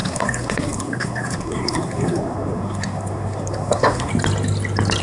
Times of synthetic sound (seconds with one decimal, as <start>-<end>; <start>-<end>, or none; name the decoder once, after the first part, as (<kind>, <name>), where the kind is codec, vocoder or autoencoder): 0.0-4.1 (codec, SNAC)